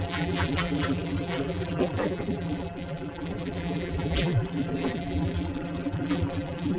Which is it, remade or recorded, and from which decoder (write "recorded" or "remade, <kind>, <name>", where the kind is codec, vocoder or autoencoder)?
remade, vocoder, BigVGAN v2